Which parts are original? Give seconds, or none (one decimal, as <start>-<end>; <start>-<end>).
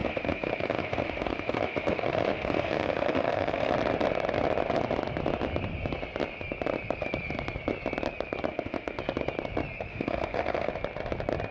3.7-8.5; 9.0-9.9; 10.7-11.5